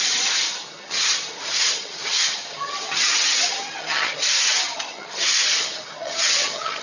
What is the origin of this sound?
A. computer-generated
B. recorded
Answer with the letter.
A